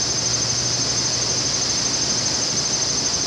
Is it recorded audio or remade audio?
recorded